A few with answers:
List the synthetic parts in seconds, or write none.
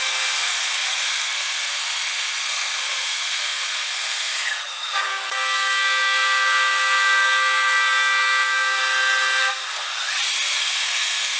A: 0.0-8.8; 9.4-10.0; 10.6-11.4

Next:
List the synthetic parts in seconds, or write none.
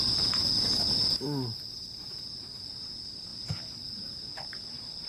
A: none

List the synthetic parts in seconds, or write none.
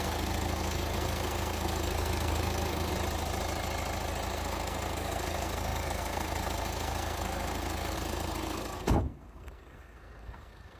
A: 0.0-2.9; 4.3-10.8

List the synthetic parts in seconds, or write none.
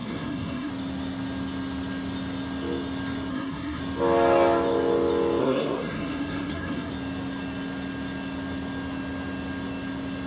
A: 0.0-0.7; 3.3-3.8; 5.4-6.9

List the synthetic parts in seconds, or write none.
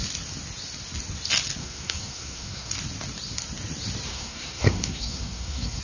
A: 1.6-2.7; 4.1-5.8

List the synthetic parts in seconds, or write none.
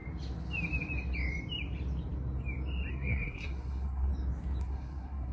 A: 2.9-4.1; 4.6-5.3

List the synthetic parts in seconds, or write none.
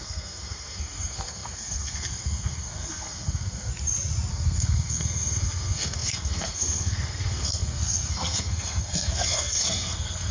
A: 0.0-3.7; 4.3-10.3